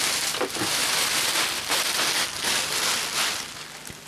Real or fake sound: real